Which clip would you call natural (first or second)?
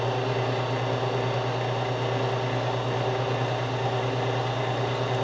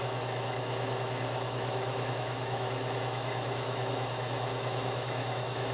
first